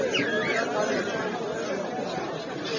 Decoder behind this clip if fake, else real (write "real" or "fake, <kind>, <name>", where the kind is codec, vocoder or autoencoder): real